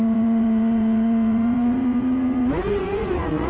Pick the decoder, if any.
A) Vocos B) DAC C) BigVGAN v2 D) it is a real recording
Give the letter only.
A